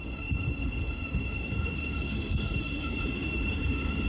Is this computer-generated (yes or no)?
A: yes